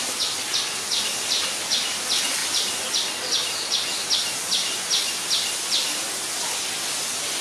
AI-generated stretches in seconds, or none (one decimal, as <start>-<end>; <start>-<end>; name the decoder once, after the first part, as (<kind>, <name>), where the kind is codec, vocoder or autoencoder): none